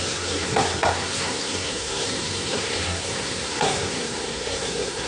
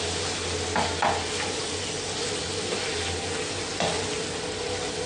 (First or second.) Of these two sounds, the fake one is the first